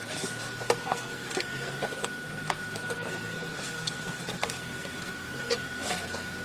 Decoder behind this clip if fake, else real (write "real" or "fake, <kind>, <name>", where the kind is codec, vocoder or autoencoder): fake, codec, SNAC